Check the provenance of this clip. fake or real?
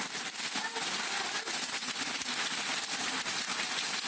fake